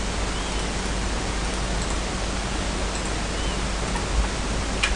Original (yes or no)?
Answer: yes